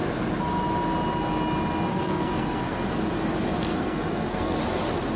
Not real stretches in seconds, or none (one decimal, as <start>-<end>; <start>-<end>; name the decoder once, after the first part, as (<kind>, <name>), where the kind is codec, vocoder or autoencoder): 1.9-2.9 (codec, SNAC); 3.7-4.6